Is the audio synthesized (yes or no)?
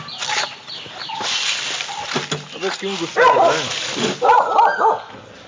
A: no